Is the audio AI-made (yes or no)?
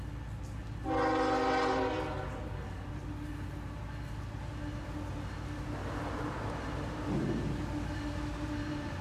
no